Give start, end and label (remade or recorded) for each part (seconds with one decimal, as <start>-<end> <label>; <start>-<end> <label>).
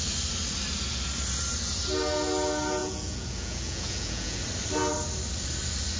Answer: 0.0-2.8 recorded; 2.8-4.4 remade; 4.4-6.0 recorded